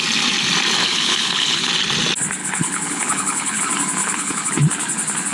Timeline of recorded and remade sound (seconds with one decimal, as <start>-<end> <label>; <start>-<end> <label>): 0.0-0.8 recorded; 0.8-1.7 remade; 1.7-2.4 recorded; 2.4-3.6 remade; 3.6-4.0 recorded; 4.0-4.5 remade; 4.5-5.3 recorded